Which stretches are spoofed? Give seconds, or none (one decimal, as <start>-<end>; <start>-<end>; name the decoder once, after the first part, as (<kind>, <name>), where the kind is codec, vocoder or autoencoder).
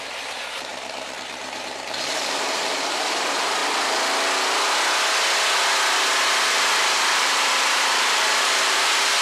0.0-3.6 (vocoder, BigVGAN v2); 6.8-9.2